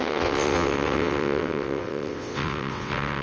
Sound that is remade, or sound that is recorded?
remade